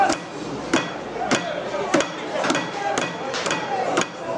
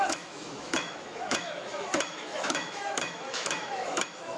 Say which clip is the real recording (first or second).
first